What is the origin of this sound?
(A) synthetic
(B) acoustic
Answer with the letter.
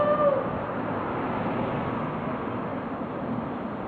B